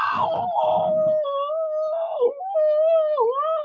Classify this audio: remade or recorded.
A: recorded